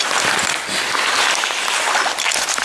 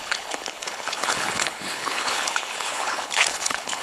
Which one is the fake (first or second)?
second